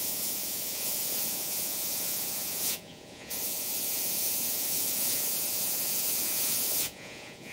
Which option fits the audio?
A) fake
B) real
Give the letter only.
A